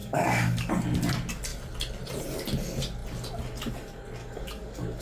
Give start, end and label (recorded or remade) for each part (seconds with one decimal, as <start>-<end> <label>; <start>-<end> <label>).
0.0-0.7 remade; 0.7-4.2 recorded; 4.2-5.0 remade